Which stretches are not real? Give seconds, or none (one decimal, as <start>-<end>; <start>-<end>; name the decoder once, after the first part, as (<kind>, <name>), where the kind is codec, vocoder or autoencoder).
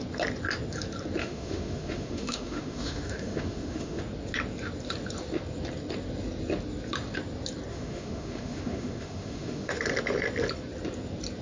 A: 1.2-4.0 (autoencoder, DAC-VAE); 7.7-9.7